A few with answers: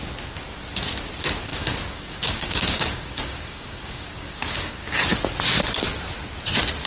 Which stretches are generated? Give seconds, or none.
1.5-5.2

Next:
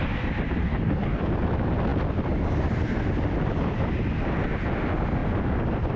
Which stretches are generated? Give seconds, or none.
0.6-1.2

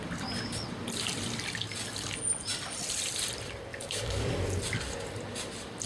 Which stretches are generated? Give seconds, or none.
3.7-4.4

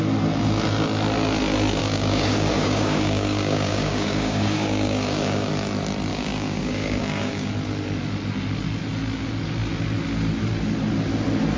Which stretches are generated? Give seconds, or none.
1.8-5.5; 6.1-7.5

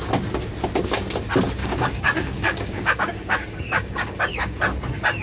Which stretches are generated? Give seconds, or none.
1.6-4.6

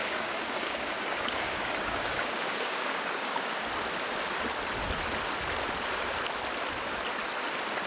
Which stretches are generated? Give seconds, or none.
0.0-3.7